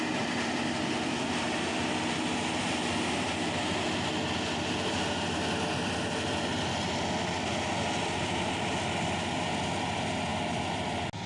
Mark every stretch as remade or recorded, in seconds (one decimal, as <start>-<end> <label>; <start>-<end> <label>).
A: 0.0-11.3 recorded